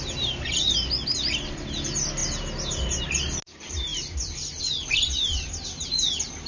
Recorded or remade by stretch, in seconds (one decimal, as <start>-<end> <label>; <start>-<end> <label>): 0.0-6.5 recorded